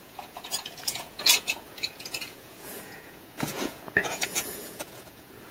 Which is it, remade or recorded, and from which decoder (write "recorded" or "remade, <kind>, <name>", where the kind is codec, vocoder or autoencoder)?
remade, vocoder, Vocos